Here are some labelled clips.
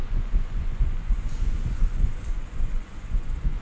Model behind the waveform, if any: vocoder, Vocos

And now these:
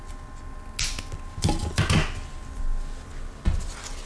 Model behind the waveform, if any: none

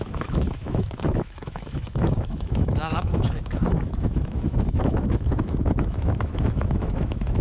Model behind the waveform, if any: autoencoder, DAC-VAE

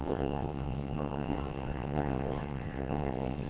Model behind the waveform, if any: vocoder, WaveNeXt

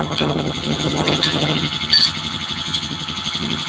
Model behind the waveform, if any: vocoder, HiFi-GAN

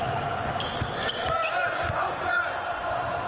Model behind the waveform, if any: vocoder, Vocos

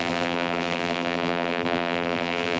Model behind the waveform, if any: vocoder, BigVGAN v2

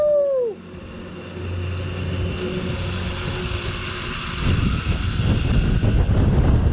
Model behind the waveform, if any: none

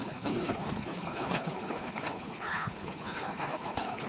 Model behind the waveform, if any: codec, HILCodec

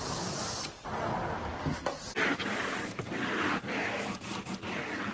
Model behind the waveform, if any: none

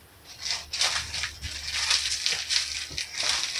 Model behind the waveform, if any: vocoder, BigVGAN v2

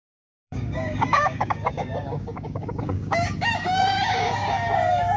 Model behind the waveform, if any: codec, DAC